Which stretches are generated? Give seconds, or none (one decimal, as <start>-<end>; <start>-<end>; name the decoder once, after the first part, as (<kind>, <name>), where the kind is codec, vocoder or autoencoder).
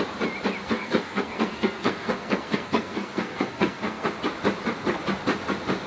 0.6-4.1 (codec, SNAC)